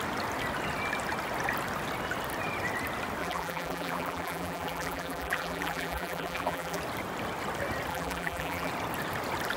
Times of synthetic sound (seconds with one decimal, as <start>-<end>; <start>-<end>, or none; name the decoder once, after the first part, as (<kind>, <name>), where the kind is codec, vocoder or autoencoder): 3.2-6.8 (vocoder, BigVGAN v2); 7.9-8.7